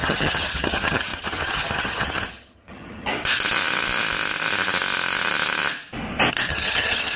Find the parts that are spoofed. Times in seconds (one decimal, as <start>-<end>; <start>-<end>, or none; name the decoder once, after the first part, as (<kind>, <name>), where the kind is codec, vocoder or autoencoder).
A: 0.0-3.1 (vocoder, HiFi-GAN); 6.5-7.2